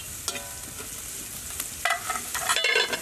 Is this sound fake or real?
real